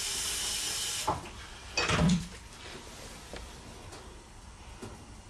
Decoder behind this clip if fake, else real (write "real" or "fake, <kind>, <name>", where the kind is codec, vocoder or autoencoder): fake, vocoder, BigVGAN v2